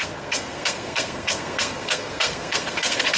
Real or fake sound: fake